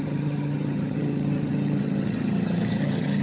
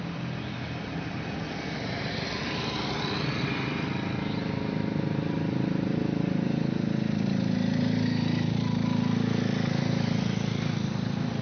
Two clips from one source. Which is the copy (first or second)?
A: first